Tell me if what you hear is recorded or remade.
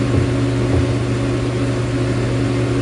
recorded